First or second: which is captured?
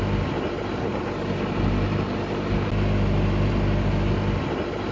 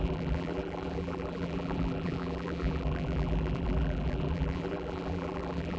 first